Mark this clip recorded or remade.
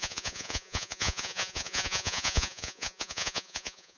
remade